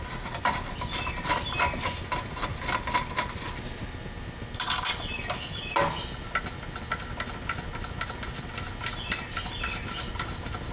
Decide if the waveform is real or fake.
real